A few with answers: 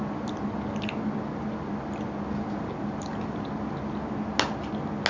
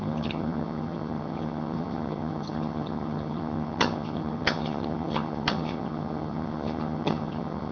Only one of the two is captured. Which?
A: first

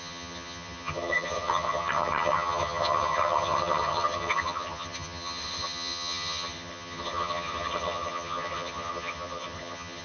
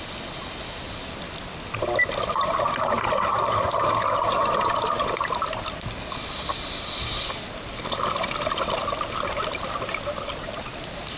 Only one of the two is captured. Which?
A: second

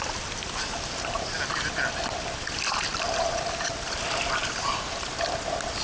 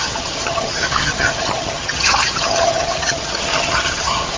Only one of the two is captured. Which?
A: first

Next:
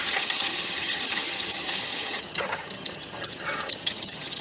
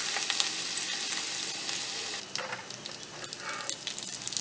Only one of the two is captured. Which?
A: second